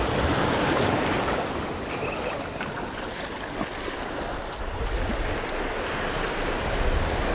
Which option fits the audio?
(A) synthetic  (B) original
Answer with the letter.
B